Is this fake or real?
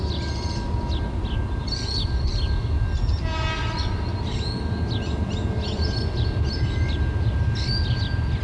real